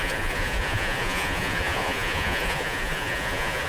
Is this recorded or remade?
remade